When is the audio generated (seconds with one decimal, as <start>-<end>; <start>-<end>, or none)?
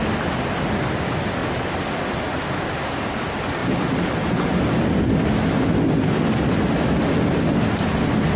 1.4-2.2